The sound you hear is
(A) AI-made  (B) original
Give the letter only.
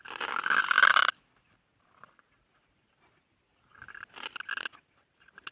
B